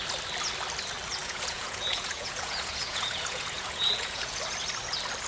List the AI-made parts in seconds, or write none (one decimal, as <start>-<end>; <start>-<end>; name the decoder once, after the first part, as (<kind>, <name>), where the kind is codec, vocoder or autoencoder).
1.2-4.4 (vocoder, Vocos)